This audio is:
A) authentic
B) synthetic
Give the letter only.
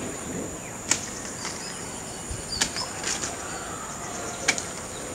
A